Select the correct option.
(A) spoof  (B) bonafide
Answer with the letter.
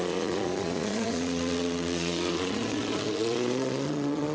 A